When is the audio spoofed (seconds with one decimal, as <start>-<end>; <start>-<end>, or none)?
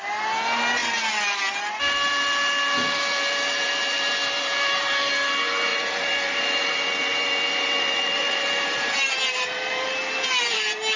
0.8-5.1; 5.7-11.0